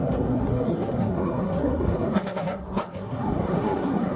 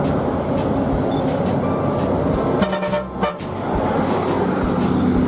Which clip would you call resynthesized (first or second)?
first